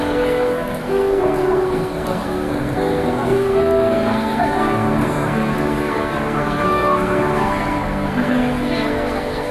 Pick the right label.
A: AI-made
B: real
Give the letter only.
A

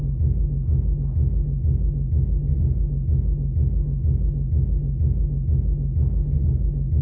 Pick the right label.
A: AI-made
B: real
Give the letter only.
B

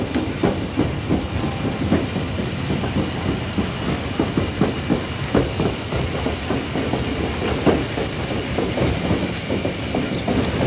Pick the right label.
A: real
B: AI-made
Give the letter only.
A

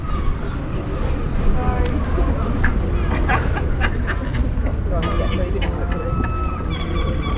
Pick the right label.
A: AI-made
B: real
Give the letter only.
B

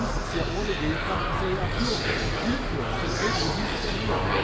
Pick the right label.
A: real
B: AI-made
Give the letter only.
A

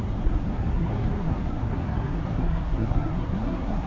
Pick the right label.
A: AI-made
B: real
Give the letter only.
A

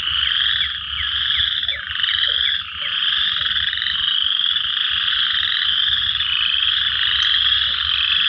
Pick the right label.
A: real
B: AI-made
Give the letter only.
A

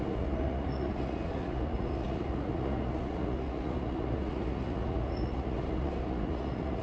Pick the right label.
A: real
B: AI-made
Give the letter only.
B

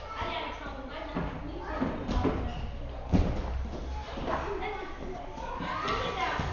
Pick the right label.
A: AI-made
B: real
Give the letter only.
B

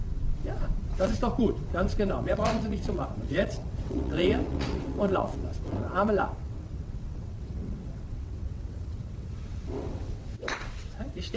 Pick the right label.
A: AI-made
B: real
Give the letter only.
A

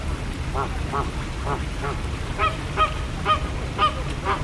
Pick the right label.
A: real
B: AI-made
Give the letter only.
A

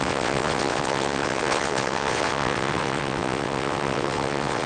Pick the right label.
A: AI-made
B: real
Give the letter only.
A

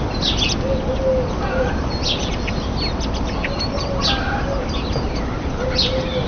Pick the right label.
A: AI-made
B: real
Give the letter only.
B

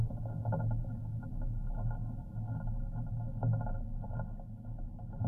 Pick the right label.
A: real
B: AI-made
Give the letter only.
A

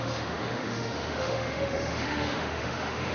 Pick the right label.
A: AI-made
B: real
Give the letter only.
A